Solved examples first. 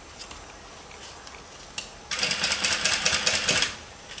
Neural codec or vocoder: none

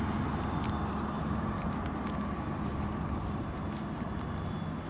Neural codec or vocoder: none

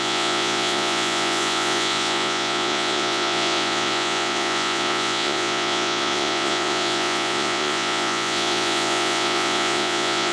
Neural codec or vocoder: vocoder, Vocos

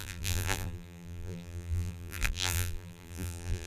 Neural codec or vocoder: vocoder, BigVGAN v2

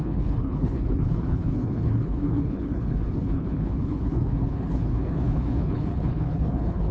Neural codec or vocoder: codec, HILCodec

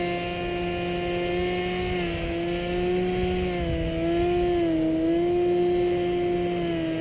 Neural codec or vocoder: none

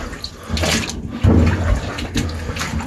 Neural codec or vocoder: none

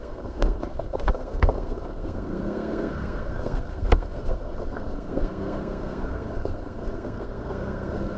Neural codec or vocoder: codec, SNAC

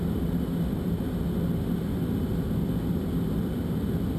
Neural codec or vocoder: none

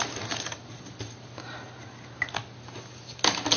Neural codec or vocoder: none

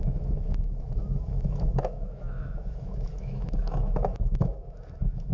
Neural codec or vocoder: autoencoder, DAC-VAE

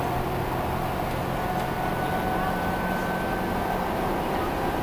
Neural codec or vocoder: none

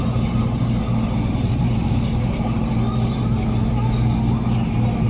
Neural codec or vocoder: none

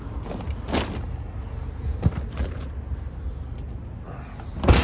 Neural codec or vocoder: none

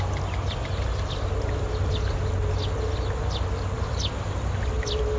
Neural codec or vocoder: none